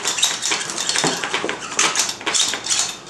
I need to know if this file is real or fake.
real